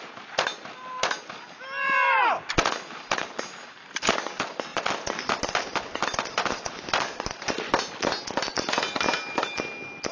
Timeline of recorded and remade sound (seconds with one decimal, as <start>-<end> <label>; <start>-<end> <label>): 0.0-10.1 recorded